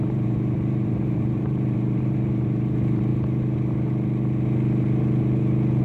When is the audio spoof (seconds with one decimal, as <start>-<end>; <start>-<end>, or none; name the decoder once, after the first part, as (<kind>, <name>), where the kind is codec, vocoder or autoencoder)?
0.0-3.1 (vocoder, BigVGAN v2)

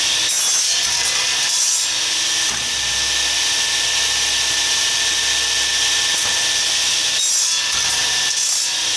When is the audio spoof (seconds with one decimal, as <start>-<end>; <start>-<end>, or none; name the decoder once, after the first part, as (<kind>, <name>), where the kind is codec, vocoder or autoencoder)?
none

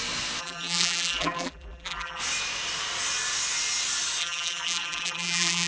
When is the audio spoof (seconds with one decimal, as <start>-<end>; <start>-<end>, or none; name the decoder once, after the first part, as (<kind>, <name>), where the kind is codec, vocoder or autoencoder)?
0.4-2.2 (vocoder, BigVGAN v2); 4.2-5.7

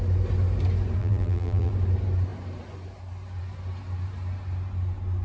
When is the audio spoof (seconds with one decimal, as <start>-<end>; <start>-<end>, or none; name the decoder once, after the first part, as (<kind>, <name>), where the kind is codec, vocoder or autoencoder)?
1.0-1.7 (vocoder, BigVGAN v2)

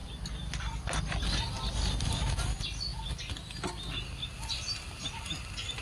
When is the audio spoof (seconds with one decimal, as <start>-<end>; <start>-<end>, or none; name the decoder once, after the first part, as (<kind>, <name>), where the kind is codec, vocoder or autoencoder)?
none

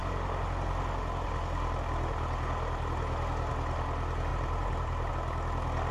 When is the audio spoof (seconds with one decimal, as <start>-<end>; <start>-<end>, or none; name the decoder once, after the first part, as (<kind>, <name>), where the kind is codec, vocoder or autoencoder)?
4.3-5.1 (vocoder, BigVGAN v2)